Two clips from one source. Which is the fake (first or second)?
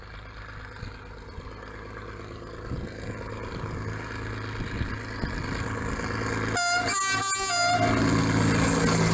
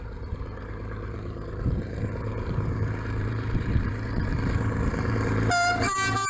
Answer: second